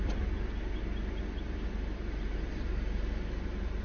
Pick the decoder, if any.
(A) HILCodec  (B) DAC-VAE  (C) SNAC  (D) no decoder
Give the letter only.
D